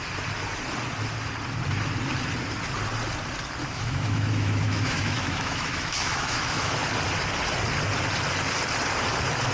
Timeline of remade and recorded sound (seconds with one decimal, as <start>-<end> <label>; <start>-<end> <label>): 0.0-3.6 recorded; 3.6-6.7 remade; 6.7-9.5 recorded